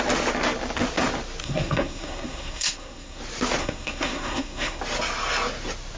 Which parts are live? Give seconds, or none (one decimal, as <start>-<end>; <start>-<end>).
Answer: 0.0-1.4; 3.2-3.6; 4.8-6.0